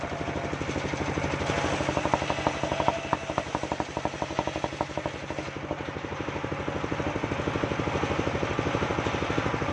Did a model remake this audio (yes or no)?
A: no